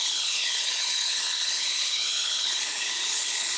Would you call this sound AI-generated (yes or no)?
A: yes